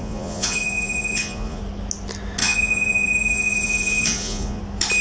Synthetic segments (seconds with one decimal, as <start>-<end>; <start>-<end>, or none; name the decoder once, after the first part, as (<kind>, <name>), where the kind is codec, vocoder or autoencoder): 0.0-1.6 (vocoder, Vocos); 2.4-4.6